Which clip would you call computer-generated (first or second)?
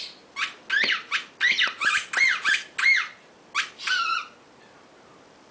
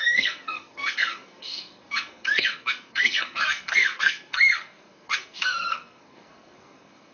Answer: second